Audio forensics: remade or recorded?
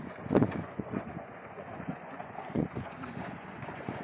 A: remade